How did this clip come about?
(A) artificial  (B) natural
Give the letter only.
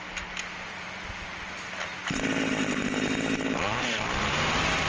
B